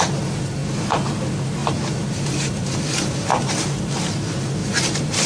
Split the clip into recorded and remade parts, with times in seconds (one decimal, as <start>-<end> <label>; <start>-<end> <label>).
0.0-1.6 recorded; 1.6-3.9 remade; 3.9-4.6 recorded; 4.6-5.3 remade